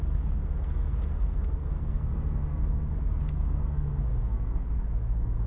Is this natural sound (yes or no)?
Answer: no